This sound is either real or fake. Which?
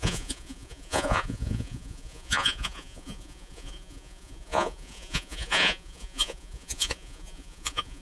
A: fake